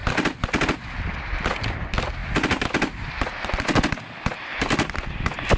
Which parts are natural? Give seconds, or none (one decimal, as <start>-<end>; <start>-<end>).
0.0-5.6